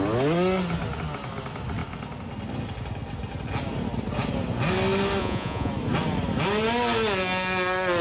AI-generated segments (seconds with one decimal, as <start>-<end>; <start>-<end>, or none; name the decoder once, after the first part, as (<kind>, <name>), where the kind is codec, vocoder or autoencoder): 5.2-5.7 (vocoder, Vocos)